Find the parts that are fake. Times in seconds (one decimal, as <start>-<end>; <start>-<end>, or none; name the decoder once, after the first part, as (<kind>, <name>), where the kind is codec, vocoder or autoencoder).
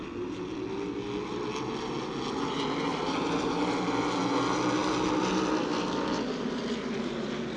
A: 2.9-3.5 (vocoder, BigVGAN v2)